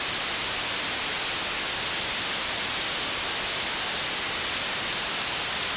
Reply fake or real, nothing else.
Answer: real